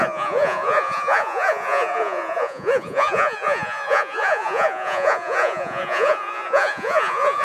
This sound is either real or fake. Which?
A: fake